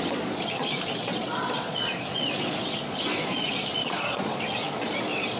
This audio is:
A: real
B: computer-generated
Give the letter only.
B